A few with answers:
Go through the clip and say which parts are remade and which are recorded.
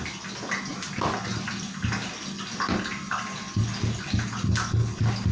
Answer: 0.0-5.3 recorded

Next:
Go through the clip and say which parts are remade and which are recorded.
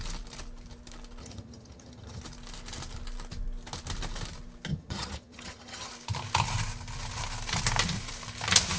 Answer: 0.0-1.2 recorded; 1.2-2.2 remade; 2.2-4.7 recorded; 4.7-5.9 remade; 5.9-8.8 recorded